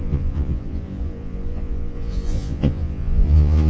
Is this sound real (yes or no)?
no